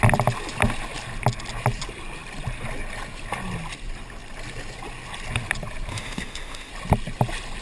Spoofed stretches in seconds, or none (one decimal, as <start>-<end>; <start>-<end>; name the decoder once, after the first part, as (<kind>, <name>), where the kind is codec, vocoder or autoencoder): 5.9-6.7 (autoencoder, DAC-VAE)